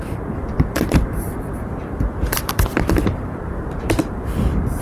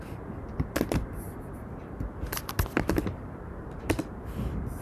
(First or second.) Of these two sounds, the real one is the second